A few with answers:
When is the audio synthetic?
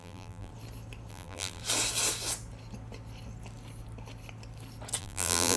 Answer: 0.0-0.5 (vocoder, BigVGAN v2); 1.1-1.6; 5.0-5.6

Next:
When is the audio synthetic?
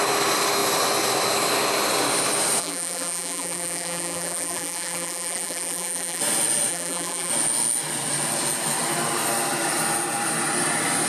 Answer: 2.6-6.2 (vocoder, BigVGAN v2); 6.7-7.3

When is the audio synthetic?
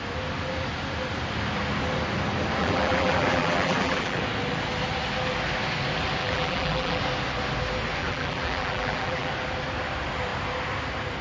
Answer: 2.6-4.2 (vocoder, BigVGAN v2); 6.2-7.0; 8.0-9.3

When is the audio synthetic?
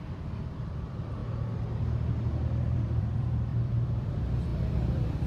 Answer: 0.0-1.2 (vocoder, BigVGAN v2); 2.6-5.3